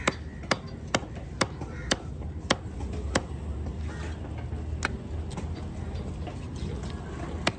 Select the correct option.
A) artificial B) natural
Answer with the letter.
B